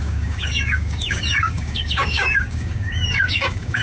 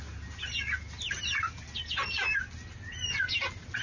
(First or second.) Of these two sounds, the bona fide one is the second